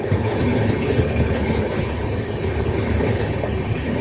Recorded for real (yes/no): no